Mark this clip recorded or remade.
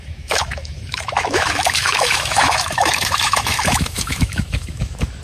remade